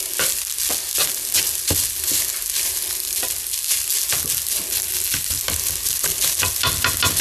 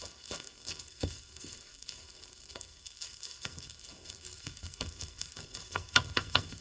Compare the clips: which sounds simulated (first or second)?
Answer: second